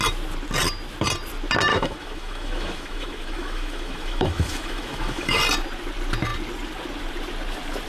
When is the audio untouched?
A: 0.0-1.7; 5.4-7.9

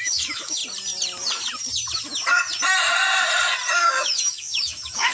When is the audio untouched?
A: 0.6-3.7

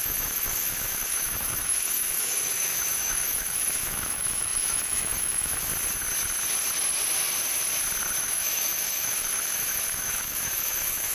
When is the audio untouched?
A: 5.7-8.2

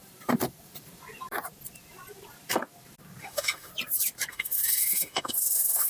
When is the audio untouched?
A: 0.0-3.2; 3.7-4.3

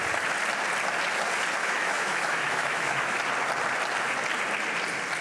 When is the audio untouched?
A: 0.0-1.6; 3.2-5.2

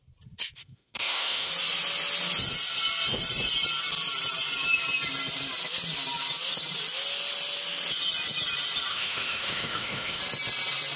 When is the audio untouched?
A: 0.0-0.6; 1.5-8.9; 10.2-11.0

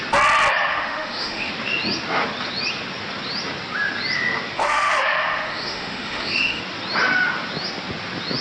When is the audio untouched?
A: 0.0-0.7; 1.5-4.6; 6.6-8.4

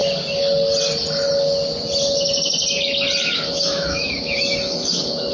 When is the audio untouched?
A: 0.0-3.2